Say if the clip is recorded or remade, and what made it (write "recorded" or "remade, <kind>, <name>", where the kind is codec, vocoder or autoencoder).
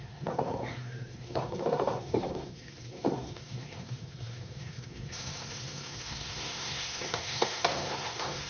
remade, codec, SNAC